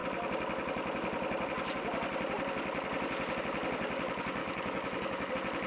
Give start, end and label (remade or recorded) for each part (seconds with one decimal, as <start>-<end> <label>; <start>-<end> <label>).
0.0-4.4 recorded; 4.4-5.3 remade; 5.3-5.7 recorded